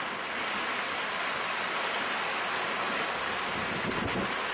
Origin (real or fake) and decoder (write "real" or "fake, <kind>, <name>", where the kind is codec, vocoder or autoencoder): real